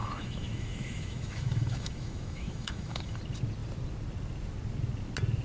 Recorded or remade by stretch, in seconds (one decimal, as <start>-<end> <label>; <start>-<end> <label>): 0.0-3.2 remade; 3.2-5.4 recorded